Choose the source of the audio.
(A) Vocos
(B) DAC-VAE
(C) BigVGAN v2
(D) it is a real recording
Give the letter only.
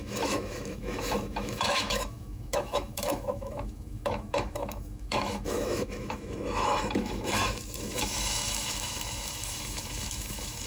B